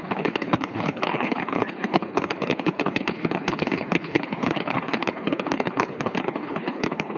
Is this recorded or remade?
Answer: remade